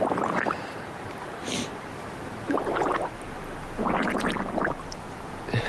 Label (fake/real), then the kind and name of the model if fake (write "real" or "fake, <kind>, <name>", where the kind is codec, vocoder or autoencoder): real